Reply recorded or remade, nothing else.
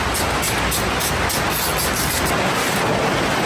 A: recorded